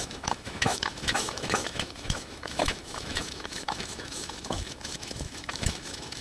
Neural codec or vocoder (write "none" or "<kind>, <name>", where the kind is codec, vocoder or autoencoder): autoencoder, DAC-VAE